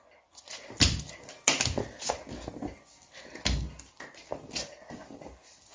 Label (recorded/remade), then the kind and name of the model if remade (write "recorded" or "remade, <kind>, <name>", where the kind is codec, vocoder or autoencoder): recorded